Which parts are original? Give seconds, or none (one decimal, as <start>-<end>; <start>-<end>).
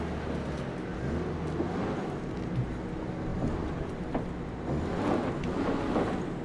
0.0-3.3; 4.0-6.4